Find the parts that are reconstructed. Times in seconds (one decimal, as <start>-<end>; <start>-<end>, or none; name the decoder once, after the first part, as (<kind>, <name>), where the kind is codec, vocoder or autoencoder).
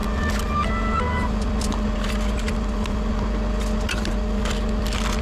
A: none